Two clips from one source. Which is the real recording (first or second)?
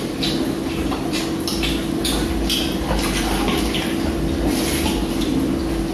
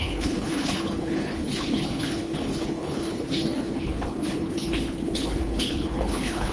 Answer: first